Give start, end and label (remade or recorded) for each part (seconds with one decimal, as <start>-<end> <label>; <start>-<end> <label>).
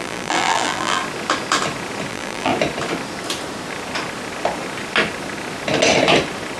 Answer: 0.0-1.0 remade; 1.0-2.1 recorded; 2.1-2.5 remade; 2.5-6.6 recorded